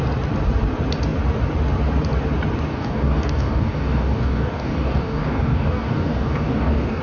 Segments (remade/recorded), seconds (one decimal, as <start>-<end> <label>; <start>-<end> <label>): 0.0-2.7 recorded; 2.7-7.0 remade